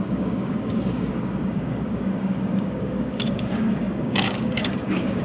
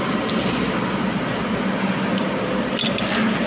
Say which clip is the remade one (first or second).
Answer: first